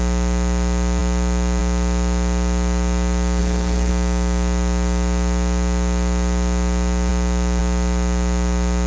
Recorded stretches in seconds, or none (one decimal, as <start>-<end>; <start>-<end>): 0.0-3.4; 3.9-8.9